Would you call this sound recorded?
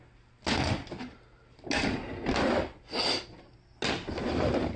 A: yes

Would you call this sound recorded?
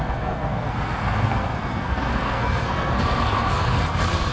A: no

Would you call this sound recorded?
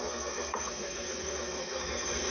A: no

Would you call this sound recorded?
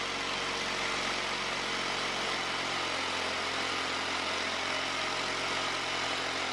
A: yes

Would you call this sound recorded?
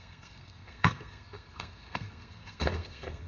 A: no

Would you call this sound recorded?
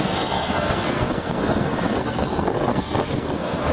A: no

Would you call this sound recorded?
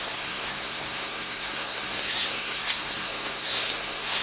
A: no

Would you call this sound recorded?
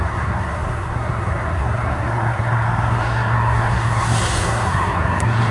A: no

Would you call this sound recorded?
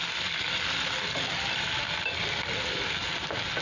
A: yes